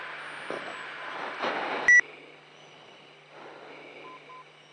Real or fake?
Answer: real